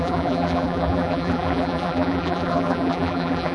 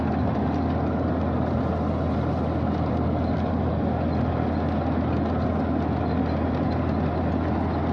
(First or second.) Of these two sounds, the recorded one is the second